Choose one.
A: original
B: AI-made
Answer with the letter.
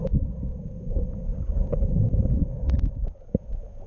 B